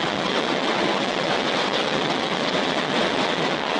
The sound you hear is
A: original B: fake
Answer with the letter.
B